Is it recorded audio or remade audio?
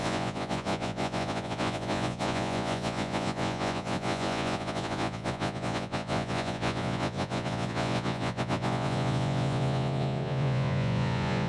remade